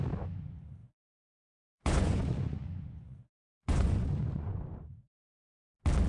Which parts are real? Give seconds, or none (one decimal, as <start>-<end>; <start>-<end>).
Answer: 0.0-0.8; 4.5-6.1